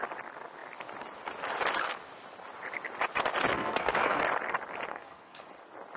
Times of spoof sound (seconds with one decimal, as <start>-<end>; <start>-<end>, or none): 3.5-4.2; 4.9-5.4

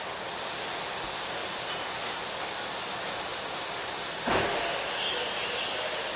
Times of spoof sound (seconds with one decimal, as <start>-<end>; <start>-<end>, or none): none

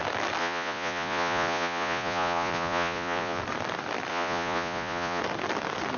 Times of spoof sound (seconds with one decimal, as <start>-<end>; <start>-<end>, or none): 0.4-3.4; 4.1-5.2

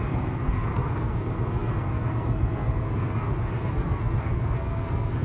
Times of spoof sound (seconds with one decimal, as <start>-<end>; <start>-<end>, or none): 0.0-5.2

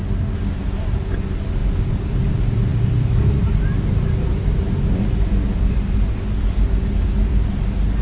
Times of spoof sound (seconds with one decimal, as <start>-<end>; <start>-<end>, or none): 1.6-2.3; 2.7-7.5